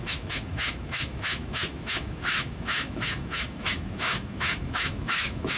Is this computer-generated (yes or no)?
yes